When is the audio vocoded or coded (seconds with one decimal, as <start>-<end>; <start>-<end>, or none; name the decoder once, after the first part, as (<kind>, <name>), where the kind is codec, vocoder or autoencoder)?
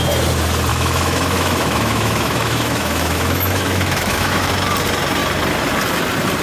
0.7-4.5 (autoencoder, DAC-VAE)